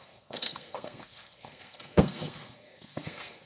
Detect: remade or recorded remade